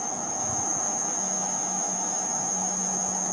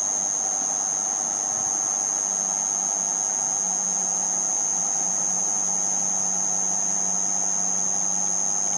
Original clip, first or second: second